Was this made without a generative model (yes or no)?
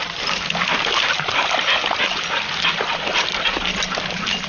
yes